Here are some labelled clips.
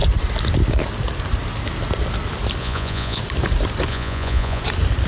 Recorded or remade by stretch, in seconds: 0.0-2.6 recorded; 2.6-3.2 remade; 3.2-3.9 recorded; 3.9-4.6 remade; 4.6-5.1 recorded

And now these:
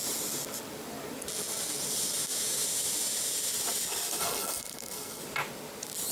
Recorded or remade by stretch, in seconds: 0.0-4.2 recorded; 4.2-5.2 remade; 5.2-6.1 recorded

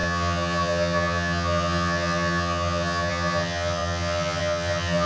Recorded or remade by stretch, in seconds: 0.0-5.1 remade